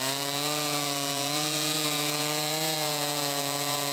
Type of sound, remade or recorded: remade